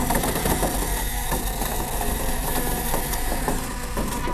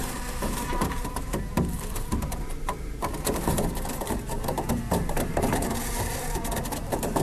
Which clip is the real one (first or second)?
first